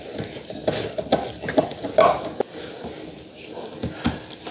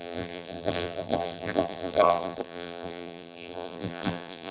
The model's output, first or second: second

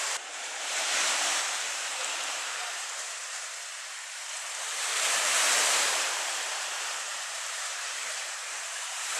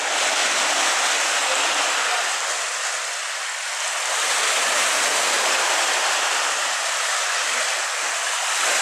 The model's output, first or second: first